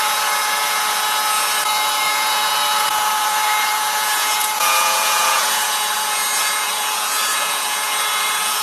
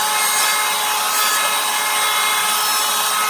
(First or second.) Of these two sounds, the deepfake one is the first